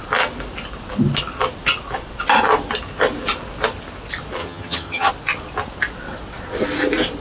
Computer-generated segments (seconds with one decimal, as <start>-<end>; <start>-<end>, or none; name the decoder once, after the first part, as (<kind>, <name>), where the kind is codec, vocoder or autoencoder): 4.4-5.1 (vocoder, HiFi-GAN)